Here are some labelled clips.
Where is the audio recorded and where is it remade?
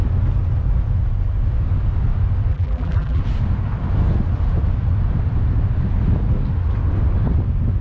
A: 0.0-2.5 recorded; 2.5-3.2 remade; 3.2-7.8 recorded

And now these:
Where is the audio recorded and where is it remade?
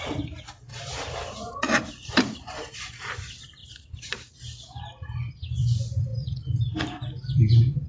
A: 0.0-0.7 recorded; 0.7-2.9 remade; 2.9-3.6 recorded; 3.6-4.3 remade; 4.3-7.9 recorded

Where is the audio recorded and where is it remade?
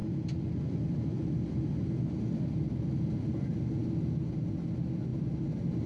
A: 0.0-5.9 recorded